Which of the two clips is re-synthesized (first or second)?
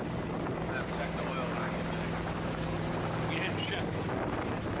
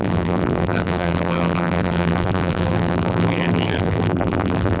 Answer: second